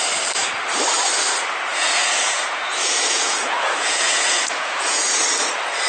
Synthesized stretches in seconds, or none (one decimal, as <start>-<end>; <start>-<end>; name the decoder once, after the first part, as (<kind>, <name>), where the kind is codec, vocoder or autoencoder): 1.7-5.2 (vocoder, Vocos)